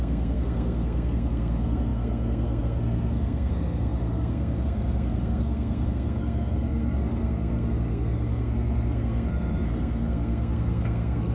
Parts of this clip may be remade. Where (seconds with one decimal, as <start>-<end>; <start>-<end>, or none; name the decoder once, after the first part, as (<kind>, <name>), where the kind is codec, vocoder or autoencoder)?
0.0-11.3 (codec, SNAC)

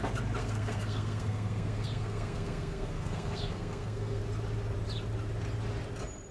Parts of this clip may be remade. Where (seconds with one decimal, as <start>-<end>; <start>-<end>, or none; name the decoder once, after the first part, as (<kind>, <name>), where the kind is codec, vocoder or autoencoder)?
0.4-4.2 (codec, SNAC)

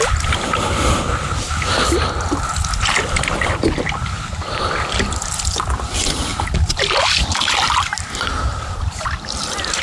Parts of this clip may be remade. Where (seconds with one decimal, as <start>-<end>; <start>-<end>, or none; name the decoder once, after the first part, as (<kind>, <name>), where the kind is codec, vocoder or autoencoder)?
none